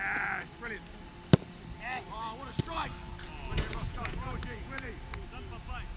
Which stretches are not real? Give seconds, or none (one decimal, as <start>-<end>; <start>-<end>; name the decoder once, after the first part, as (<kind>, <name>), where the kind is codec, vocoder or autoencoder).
3.5-4.9 (vocoder, Vocos)